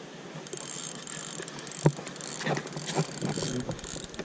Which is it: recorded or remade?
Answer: recorded